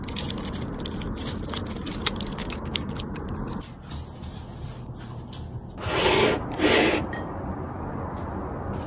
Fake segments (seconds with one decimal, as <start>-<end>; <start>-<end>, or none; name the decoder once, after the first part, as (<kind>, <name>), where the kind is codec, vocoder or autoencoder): 2.4-2.9 (codec, DAC)